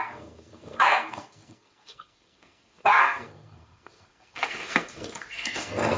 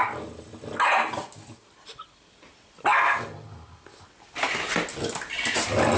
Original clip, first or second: second